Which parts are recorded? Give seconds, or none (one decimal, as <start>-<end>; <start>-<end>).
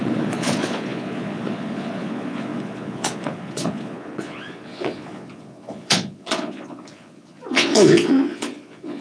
none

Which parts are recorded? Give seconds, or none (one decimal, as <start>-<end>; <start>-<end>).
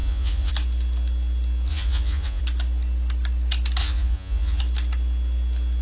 0.5-1.7; 2.4-3.8; 4.6-5.8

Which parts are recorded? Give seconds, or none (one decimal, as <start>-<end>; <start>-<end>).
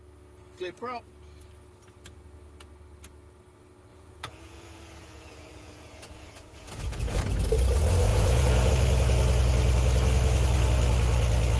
0.0-3.9; 7.2-8.1; 8.7-11.6